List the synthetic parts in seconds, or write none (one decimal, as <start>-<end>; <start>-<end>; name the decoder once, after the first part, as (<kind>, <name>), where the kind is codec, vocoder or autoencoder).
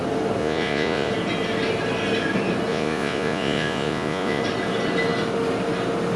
0.4-1.1 (vocoder, Vocos); 2.7-4.4